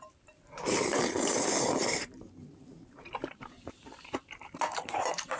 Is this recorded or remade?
remade